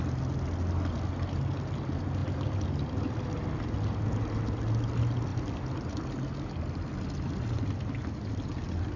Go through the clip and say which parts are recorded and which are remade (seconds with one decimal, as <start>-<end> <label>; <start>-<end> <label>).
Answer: 0.0-9.0 recorded